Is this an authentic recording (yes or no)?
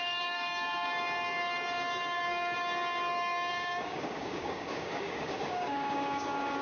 no